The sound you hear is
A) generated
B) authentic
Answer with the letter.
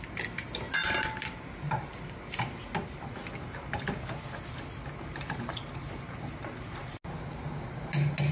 B